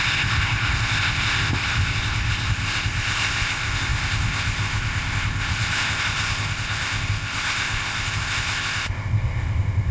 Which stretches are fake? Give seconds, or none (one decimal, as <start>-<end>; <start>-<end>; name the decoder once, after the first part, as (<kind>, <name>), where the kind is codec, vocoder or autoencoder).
0.0-9.9 (codec, ZipCodec)